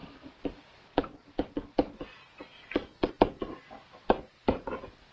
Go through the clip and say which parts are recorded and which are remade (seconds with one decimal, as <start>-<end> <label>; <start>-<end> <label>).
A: 0.0-5.1 recorded